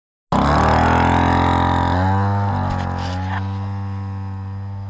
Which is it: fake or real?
real